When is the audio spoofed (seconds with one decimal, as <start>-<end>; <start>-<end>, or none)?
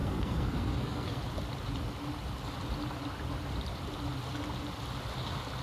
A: 0.0-1.2